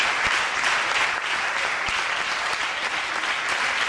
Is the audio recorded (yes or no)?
yes